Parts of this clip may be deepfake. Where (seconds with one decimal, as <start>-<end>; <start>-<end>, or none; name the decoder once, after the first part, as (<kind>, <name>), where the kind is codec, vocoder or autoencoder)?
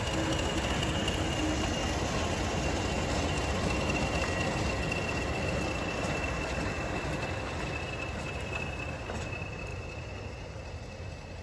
none